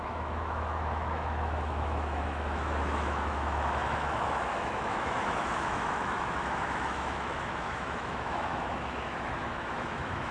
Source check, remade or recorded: remade